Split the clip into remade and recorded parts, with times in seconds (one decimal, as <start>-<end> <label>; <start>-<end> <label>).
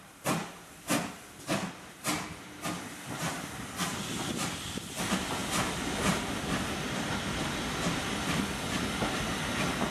0.0-9.9 recorded